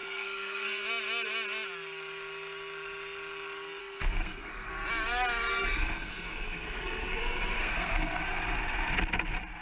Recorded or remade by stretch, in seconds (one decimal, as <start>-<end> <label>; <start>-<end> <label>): 0.0-0.8 remade; 0.8-3.8 recorded; 3.8-4.7 remade; 4.7-5.5 recorded; 5.5-8.2 remade; 8.2-9.6 recorded